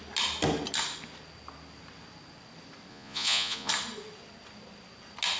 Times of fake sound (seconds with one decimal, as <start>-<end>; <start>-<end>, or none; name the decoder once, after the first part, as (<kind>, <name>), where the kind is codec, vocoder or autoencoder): 2.9-3.7 (vocoder, Vocos)